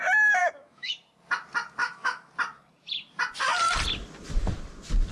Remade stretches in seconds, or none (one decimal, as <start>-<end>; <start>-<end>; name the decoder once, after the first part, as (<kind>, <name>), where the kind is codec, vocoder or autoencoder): 0.4-0.9 (autoencoder, DAC-VAE); 1.8-2.3